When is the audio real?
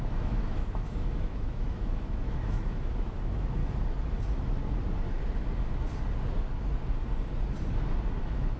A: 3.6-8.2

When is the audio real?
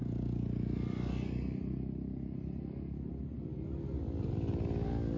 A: 0.0-5.2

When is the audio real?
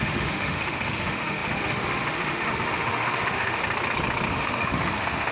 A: 3.6-4.3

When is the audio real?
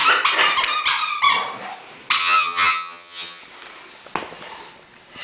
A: 0.0-2.2; 3.4-5.2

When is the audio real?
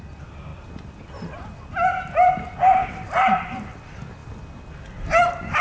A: 0.0-5.6